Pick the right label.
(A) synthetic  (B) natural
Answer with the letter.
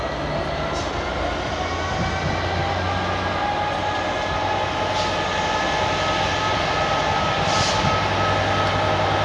B